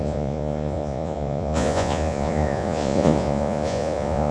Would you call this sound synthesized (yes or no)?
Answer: yes